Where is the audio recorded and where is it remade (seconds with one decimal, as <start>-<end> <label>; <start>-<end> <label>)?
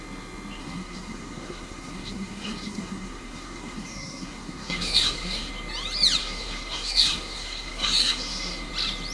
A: 0.0-0.6 recorded; 0.6-5.5 remade; 5.5-6.2 recorded; 6.2-8.7 remade; 8.7-9.1 recorded